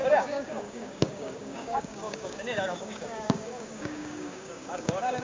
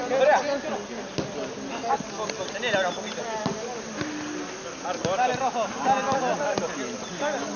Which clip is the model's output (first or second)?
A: first